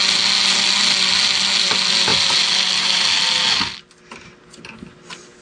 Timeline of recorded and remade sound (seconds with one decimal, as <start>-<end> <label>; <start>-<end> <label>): 0.0-5.4 recorded